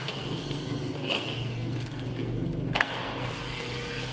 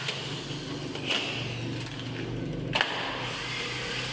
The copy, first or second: first